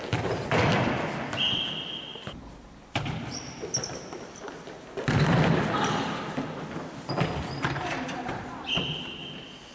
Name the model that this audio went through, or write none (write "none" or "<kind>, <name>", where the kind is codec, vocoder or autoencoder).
none